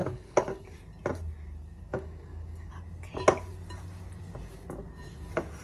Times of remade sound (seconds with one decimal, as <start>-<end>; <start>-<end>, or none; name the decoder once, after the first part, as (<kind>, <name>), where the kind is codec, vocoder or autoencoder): 0.0-0.8 (codec, DAC); 1.9-2.7